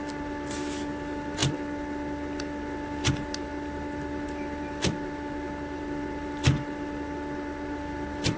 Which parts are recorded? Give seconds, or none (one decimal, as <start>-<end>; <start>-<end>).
none